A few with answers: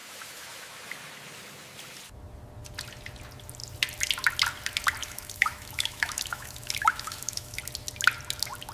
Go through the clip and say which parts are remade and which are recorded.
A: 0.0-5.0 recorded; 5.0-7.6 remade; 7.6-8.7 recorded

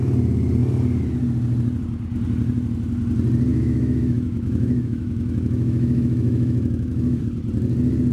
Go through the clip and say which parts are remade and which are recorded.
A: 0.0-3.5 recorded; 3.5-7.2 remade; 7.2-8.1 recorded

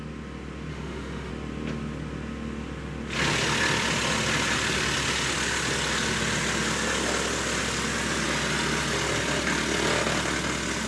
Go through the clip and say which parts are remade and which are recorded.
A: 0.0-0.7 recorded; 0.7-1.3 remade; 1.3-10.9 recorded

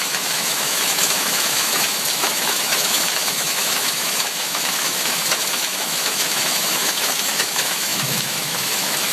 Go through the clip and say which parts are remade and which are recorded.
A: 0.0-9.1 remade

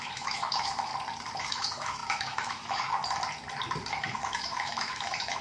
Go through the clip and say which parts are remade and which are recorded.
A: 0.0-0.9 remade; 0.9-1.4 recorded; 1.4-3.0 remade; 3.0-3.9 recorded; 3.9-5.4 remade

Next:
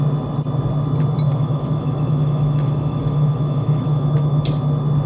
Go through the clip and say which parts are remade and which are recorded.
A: 0.0-1.3 recorded; 1.3-4.4 remade; 4.4-5.1 recorded

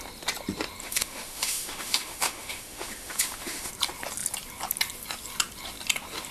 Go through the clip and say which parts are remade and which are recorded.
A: 0.0-0.8 recorded; 0.8-3.7 remade; 3.7-6.3 recorded

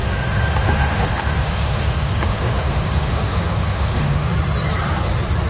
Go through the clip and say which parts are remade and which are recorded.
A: 0.0-4.3 remade; 4.3-5.5 recorded